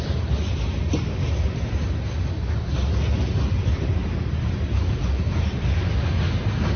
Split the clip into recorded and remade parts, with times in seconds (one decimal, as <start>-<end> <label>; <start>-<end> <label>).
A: 0.0-3.5 recorded; 3.5-5.8 remade; 5.8-6.8 recorded